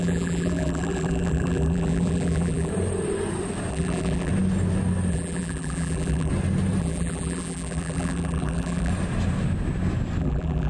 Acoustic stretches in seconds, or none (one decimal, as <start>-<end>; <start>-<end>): 2.7-3.7; 4.3-5.1; 6.3-6.8; 8.9-10.2